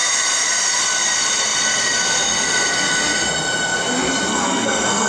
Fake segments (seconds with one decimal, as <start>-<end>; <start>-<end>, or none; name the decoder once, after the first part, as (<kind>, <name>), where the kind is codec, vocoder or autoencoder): 4.3-5.1 (codec, SNAC)